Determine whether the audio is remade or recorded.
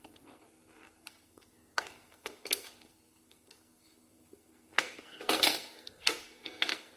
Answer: remade